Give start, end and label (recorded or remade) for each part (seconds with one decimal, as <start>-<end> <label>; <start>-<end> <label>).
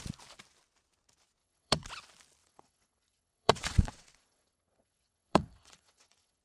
0.0-1.4 recorded; 1.4-1.9 remade; 1.9-2.4 recorded; 2.4-6.4 remade